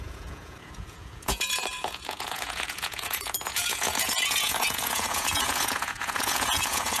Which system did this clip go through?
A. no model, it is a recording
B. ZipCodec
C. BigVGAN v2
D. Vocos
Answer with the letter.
D